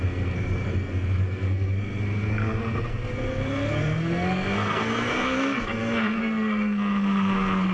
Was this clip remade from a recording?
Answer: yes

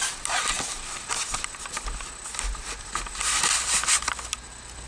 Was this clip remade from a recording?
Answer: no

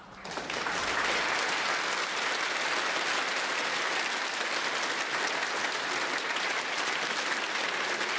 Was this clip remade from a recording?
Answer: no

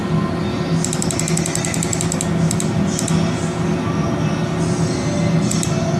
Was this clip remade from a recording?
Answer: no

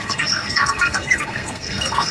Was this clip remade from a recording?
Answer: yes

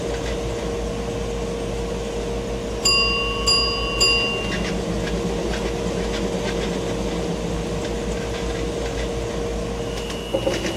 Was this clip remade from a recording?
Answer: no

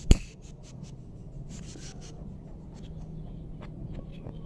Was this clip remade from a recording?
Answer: no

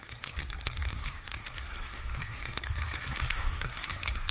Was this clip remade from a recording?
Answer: yes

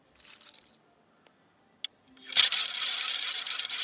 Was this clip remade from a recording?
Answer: no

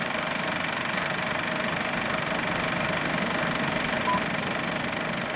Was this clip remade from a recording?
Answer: no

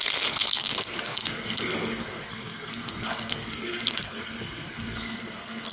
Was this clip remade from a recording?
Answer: yes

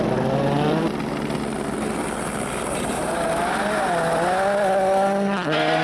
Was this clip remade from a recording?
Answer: no